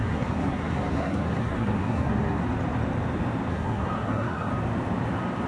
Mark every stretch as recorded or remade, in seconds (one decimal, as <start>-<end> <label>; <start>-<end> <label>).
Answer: 0.0-2.4 remade; 2.4-3.5 recorded; 3.5-4.5 remade; 4.5-5.5 recorded

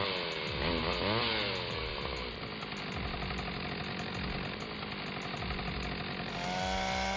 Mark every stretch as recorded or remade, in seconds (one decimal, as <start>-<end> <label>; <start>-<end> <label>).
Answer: 0.0-7.2 recorded

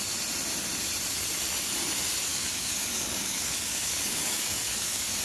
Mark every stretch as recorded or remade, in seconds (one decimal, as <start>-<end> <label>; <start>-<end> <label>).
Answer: 0.0-2.3 recorded; 2.3-5.2 remade